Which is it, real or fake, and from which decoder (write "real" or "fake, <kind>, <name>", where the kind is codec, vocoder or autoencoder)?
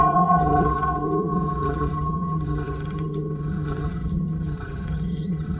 fake, vocoder, HiFi-GAN